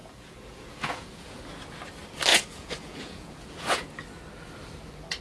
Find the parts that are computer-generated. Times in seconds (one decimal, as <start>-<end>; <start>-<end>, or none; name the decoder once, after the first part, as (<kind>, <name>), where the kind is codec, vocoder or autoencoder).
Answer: 0.0-1.4 (vocoder, Vocos); 2.3-3.9